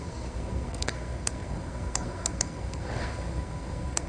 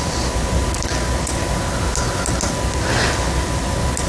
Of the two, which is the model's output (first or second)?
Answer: first